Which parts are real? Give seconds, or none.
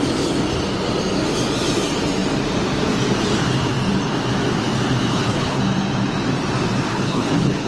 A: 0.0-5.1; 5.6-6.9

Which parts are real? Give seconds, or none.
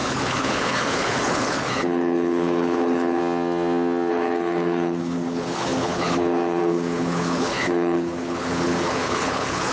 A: 3.2-4.1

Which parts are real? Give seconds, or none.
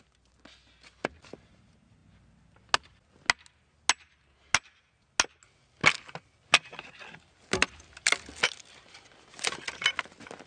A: 0.0-10.5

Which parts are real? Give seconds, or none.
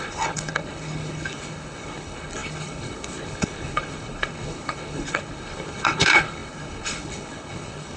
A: none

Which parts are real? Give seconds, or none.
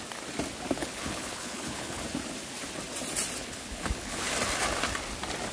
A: 0.0-0.8; 2.0-3.4; 4.3-5.5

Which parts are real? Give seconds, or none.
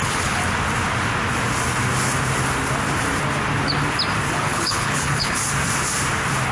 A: 0.4-4.3; 5.4-6.5